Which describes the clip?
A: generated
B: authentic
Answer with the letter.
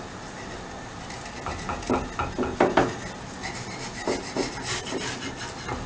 B